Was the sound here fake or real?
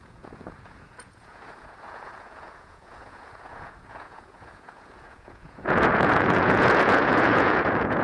fake